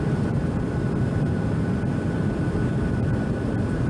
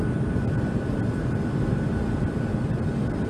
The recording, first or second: second